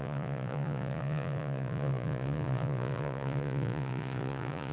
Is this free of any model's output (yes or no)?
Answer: no